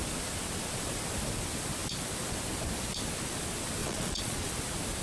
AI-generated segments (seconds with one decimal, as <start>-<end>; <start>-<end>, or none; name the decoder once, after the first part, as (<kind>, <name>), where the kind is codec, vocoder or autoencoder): 3.8-4.5 (vocoder, Vocos)